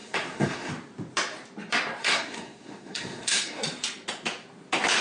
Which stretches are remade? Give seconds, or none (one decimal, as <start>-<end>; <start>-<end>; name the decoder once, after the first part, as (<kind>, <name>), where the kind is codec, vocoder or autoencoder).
0.0-0.7 (codec, SNAC); 2.0-3.6